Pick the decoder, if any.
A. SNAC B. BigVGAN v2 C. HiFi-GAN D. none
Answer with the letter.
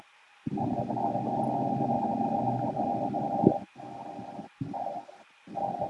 D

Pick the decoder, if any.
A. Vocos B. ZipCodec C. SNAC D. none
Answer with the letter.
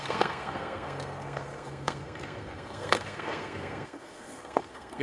C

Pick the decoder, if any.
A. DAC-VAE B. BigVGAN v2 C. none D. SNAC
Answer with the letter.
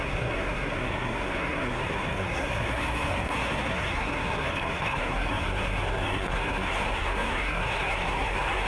D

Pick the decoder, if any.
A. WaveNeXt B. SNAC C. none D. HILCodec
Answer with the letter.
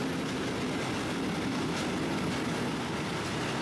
C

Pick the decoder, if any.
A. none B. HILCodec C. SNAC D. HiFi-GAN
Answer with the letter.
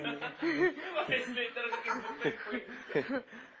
A